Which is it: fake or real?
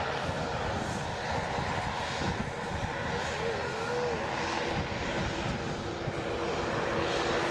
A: real